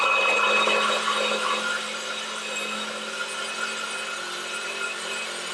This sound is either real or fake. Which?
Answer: real